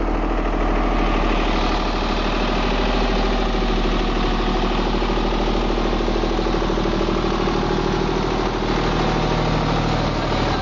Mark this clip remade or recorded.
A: recorded